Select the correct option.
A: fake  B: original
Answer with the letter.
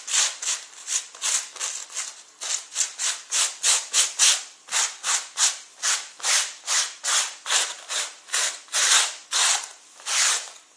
A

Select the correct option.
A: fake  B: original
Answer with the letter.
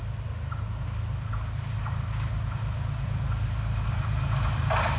B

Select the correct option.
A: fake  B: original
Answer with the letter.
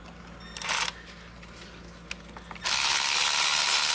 B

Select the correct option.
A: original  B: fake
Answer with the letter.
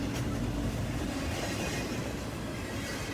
A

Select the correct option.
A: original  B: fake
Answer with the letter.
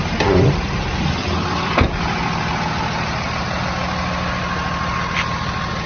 A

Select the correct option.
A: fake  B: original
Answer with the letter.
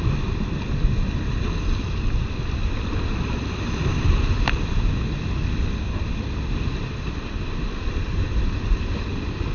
B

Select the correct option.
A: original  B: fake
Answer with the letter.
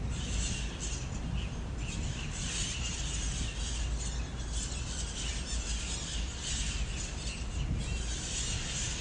A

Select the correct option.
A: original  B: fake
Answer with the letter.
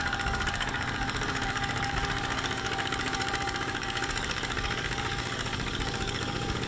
B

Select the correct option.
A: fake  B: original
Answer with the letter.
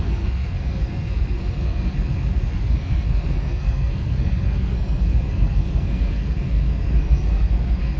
A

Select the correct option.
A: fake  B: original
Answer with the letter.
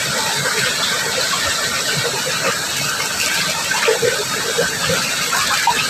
A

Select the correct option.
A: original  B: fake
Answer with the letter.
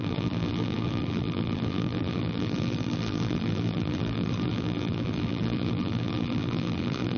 B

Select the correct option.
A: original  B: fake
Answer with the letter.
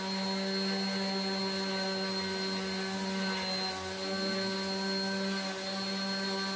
A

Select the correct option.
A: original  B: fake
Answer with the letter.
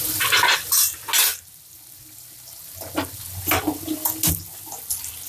A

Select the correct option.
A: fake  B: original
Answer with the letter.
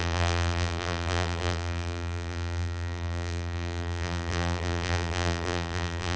A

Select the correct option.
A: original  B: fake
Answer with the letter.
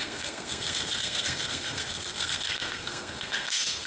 B